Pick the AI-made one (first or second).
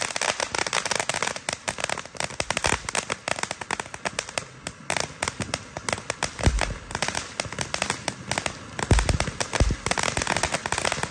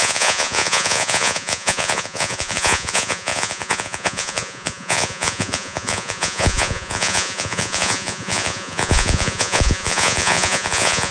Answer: second